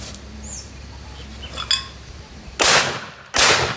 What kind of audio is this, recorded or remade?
recorded